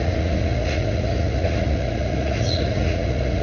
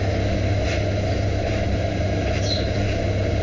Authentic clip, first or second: second